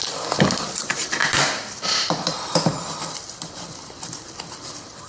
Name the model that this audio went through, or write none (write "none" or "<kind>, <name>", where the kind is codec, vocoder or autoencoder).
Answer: vocoder, BigVGAN v2